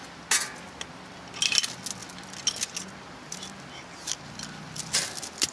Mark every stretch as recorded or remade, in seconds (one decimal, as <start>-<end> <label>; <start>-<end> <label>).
0.0-5.5 recorded